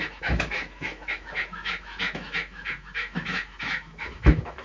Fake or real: fake